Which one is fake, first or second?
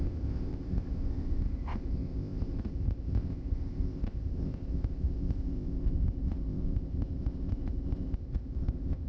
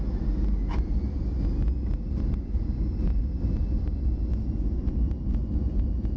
first